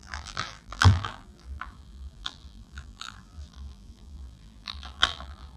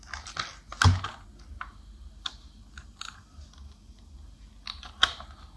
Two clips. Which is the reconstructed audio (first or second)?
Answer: first